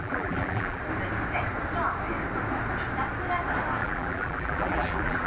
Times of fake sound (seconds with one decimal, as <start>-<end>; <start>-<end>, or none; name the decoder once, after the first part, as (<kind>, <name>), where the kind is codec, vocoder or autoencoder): 0.0-0.8 (vocoder, BigVGAN v2); 3.8-5.3